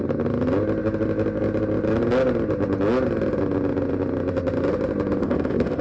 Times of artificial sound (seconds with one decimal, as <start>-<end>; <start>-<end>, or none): 5.2-5.8